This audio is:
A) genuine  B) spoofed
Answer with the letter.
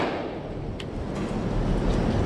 A